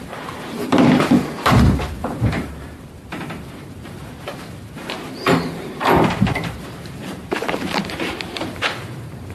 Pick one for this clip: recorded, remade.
remade